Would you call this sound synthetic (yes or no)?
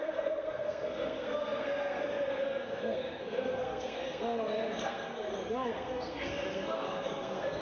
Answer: yes